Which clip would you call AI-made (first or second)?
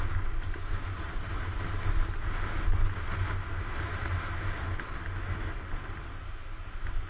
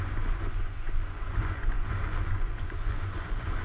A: second